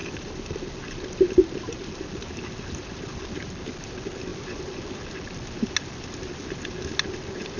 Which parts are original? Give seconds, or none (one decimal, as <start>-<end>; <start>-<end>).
3.9-7.6